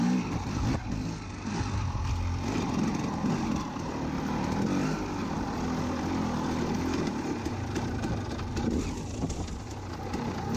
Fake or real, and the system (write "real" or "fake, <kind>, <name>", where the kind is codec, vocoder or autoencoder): real